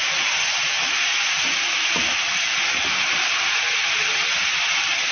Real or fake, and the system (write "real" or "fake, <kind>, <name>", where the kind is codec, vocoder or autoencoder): real